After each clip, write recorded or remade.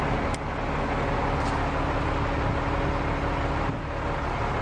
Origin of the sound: recorded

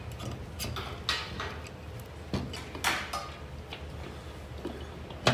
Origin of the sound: recorded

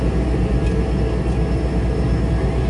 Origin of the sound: recorded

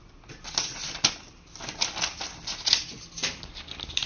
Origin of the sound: recorded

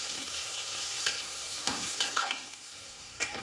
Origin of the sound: remade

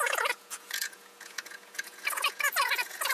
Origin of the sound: remade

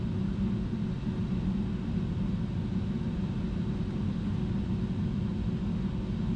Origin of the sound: recorded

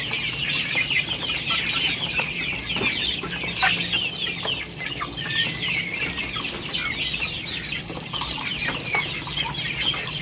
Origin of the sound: recorded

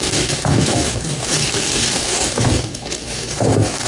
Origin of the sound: remade